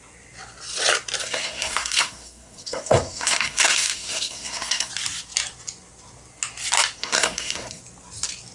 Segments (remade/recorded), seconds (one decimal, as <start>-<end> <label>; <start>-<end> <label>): 0.0-1.2 recorded; 1.2-4.9 remade; 4.9-7.0 recorded; 7.0-7.8 remade; 7.8-8.5 recorded